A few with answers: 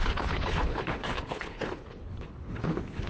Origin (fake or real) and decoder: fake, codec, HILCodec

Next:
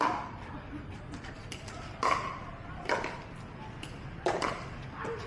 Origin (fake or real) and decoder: real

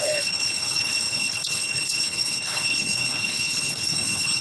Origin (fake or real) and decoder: fake, codec, HILCodec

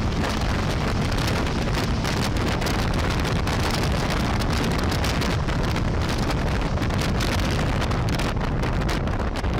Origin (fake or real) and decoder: real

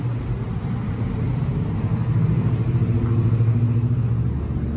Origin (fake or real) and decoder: real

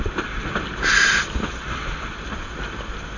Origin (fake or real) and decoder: real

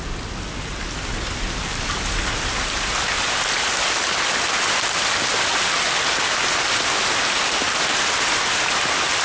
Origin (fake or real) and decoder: real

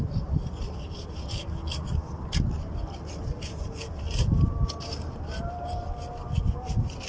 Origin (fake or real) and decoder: real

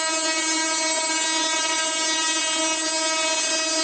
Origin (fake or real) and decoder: real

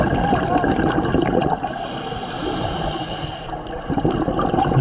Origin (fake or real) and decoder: real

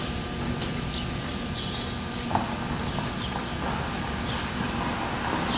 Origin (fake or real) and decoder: real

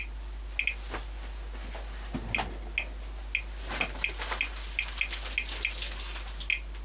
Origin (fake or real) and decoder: real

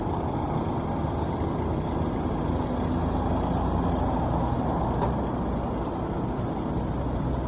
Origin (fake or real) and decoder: real